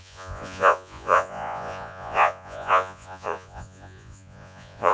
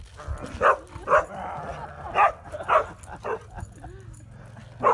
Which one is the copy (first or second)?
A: first